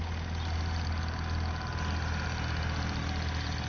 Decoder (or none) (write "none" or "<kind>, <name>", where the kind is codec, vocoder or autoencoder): none